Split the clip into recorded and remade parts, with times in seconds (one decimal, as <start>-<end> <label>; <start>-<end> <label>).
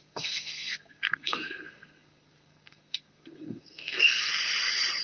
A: 0.0-4.3 remade; 4.3-5.0 recorded